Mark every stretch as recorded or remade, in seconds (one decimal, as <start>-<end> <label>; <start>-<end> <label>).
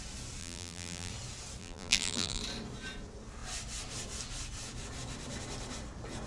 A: 0.0-0.4 recorded; 0.4-1.1 remade; 1.1-1.6 recorded; 1.6-2.4 remade; 2.4-6.3 recorded